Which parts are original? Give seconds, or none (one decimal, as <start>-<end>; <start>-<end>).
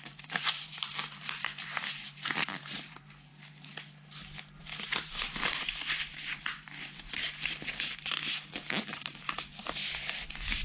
3.3-4.6